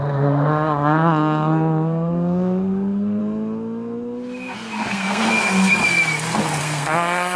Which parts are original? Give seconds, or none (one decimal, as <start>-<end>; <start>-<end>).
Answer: 3.2-4.9; 5.8-6.6